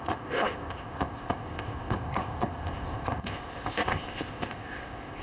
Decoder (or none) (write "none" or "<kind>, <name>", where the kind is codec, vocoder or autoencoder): codec, ZipCodec